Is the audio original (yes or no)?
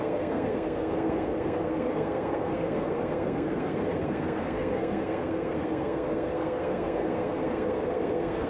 no